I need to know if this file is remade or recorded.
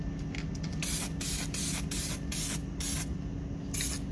recorded